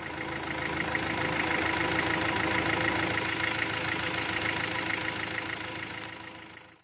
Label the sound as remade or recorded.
recorded